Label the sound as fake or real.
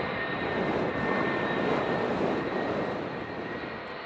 real